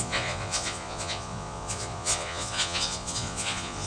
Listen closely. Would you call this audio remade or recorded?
remade